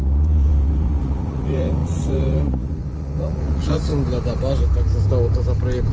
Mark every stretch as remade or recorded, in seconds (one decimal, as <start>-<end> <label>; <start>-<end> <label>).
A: 0.0-3.9 remade; 3.9-5.9 recorded